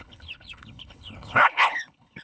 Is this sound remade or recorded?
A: remade